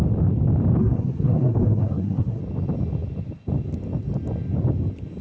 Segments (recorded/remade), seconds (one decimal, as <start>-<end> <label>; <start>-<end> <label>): 0.0-0.8 recorded; 0.8-2.4 remade; 2.4-5.2 recorded